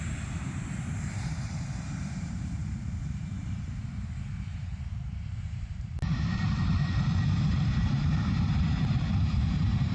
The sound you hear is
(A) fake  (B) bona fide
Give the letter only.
A